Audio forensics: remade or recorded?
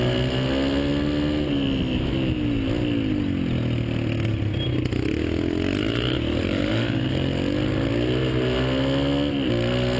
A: recorded